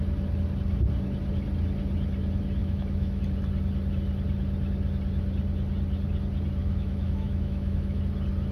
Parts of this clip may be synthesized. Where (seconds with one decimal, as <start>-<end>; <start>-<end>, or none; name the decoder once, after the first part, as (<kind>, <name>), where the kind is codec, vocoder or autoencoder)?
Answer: 2.6-3.2 (autoencoder, DAC-VAE); 6.6-8.0